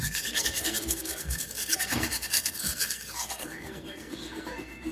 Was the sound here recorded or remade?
remade